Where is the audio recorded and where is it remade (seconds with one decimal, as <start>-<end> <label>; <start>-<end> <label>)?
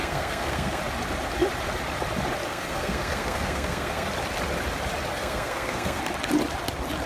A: 0.0-0.8 remade; 0.8-2.5 recorded; 2.5-4.1 remade; 4.1-5.1 recorded; 5.1-6.0 remade; 6.0-7.1 recorded